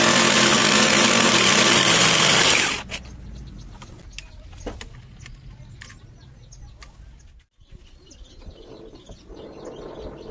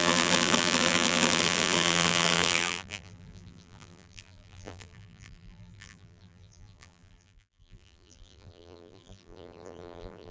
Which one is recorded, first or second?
first